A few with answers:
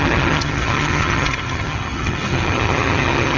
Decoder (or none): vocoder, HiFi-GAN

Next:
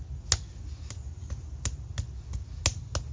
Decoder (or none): none